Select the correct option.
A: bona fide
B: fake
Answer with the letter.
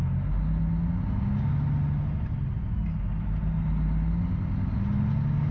A